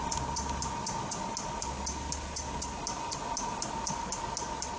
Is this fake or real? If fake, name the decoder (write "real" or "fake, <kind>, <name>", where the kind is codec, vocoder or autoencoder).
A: real